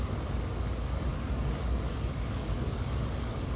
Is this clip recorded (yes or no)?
no